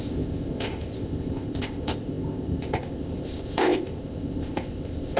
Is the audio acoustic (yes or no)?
no